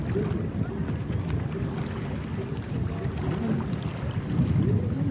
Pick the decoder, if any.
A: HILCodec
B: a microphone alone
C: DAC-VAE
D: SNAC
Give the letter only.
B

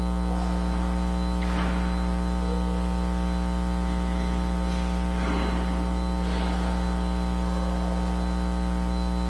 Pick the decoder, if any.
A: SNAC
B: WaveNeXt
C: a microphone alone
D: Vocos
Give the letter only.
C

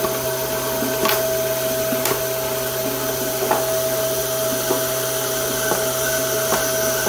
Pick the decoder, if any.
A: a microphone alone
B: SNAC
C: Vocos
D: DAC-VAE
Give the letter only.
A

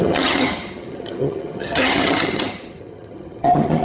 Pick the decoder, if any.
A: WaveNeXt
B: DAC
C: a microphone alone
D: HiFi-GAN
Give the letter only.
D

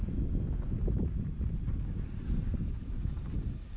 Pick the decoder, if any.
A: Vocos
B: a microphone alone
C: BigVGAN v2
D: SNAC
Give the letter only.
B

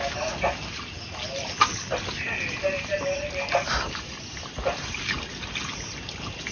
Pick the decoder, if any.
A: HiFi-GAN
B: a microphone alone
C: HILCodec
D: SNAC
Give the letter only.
B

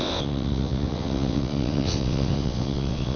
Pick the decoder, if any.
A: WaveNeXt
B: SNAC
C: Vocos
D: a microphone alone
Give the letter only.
A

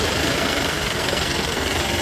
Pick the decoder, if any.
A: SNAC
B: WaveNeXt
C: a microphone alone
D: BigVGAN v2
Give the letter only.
A